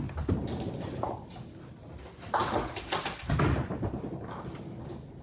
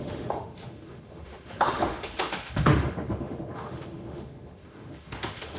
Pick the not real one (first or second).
second